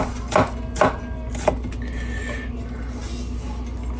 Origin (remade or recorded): recorded